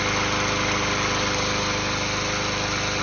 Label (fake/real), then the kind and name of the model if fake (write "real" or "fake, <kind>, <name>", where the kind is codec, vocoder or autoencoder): real